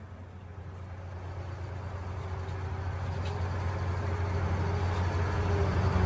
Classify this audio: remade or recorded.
recorded